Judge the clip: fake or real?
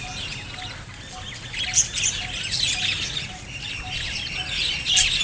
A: real